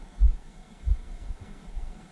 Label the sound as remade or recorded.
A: remade